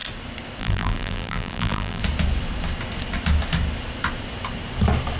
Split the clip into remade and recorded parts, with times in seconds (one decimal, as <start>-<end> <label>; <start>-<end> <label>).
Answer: 0.0-0.6 recorded; 0.6-2.0 remade; 2.0-5.2 recorded